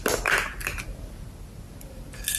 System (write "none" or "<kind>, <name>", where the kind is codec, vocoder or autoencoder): none